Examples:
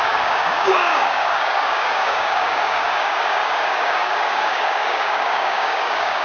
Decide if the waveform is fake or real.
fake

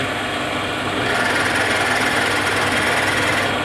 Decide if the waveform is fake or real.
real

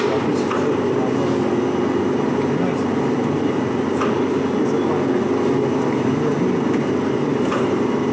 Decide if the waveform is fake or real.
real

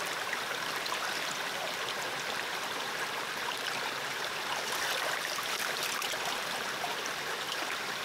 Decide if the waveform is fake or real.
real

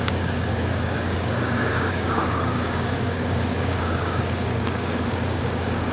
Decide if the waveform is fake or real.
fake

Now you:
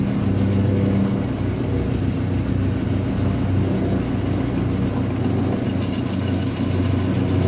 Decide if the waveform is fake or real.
real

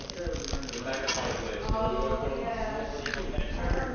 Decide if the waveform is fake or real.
real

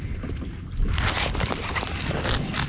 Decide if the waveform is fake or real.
real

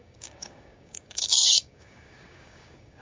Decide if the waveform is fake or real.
fake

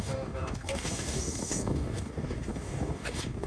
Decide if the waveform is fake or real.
fake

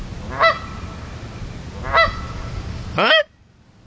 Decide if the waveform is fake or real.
real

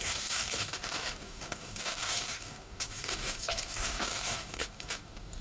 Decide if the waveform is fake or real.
fake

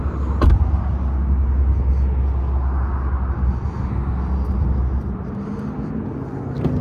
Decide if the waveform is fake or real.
real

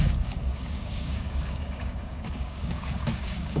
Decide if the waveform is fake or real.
fake